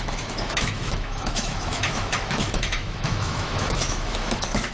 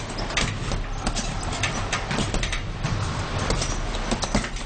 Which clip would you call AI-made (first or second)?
first